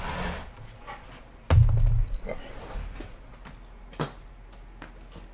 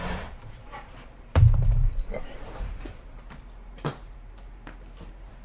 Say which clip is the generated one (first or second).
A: second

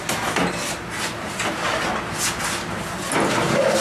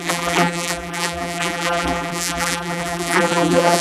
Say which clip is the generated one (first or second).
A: second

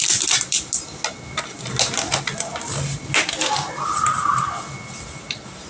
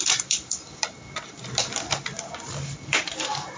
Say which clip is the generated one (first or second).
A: second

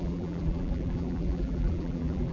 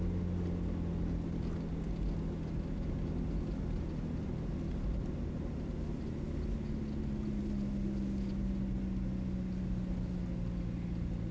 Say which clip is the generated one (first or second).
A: first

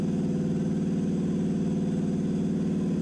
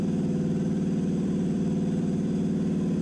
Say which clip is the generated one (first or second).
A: second